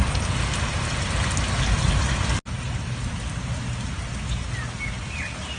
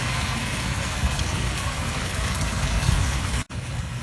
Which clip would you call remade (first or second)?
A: second